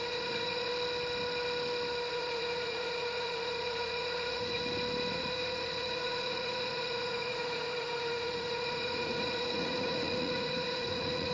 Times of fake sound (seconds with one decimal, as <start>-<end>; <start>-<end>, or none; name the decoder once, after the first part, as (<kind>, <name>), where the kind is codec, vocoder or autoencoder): 0.0-0.7 (vocoder, Vocos); 2.1-4.6; 5.1-11.3